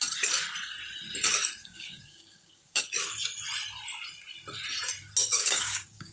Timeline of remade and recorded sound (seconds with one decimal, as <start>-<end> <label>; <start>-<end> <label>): 0.0-1.6 recorded; 1.6-2.8 remade; 2.8-5.2 recorded; 5.2-6.1 remade